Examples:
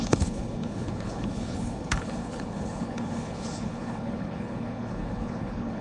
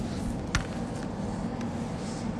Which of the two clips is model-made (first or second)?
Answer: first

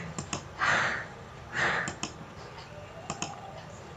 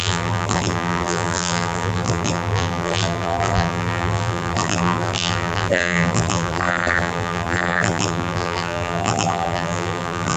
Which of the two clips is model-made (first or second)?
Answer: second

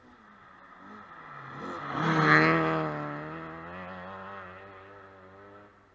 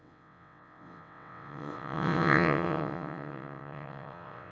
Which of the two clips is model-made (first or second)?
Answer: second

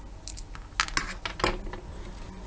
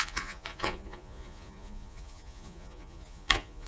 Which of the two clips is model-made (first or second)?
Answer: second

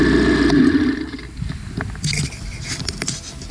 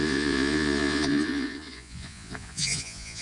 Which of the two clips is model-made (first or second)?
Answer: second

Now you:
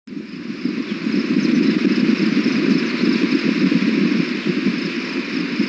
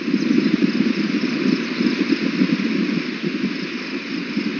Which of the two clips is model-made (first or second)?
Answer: second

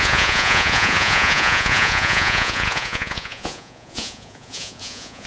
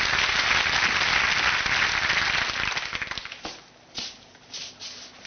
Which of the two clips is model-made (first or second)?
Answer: first